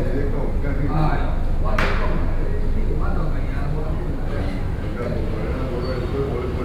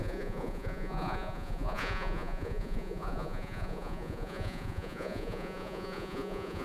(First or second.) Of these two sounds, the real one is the first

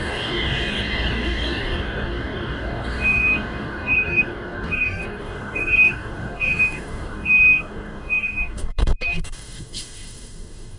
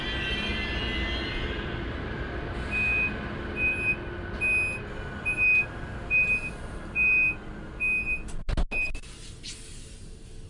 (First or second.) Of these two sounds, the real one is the second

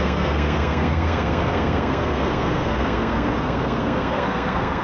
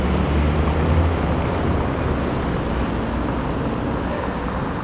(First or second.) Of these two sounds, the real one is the second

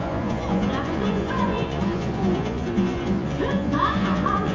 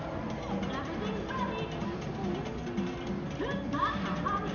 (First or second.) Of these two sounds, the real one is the second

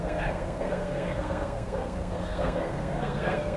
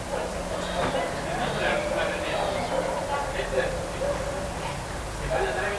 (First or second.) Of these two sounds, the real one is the second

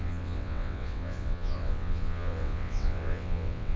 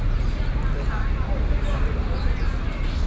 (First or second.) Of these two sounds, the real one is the second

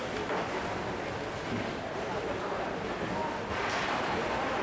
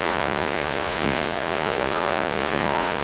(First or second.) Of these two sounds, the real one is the first